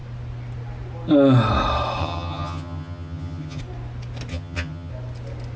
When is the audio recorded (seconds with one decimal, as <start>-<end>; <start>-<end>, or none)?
0.0-2.0; 3.6-4.3; 4.9-5.6